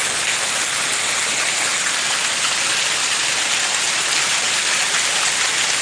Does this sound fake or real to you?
real